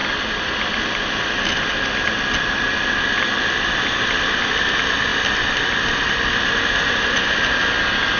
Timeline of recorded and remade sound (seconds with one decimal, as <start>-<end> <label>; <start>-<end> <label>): 0.0-8.2 recorded